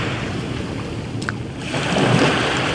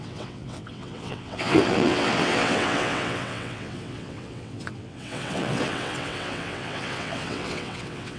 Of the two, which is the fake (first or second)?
second